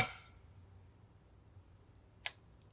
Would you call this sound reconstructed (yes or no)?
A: no